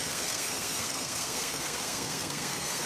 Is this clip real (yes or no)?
no